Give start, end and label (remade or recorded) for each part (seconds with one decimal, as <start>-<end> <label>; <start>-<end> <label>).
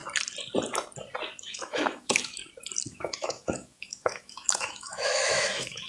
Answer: 0.0-1.4 recorded; 1.4-2.4 remade; 2.4-2.9 recorded; 2.9-5.9 remade